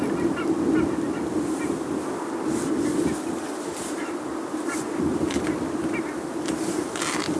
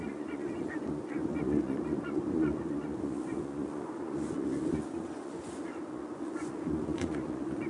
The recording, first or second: first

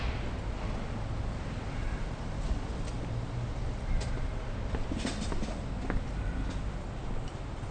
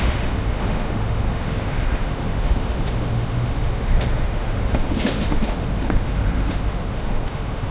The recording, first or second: first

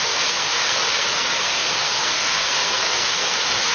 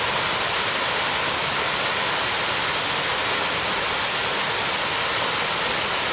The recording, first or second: second